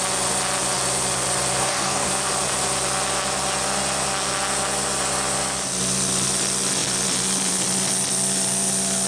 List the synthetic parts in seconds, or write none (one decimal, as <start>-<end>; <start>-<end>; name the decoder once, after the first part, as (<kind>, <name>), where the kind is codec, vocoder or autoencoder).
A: 1.6-2.1 (codec, DAC)